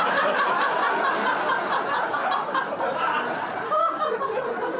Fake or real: real